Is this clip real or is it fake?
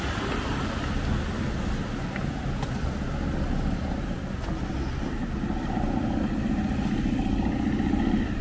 real